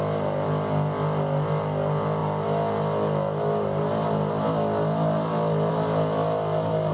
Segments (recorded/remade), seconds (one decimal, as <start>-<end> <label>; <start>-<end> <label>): 0.0-6.9 recorded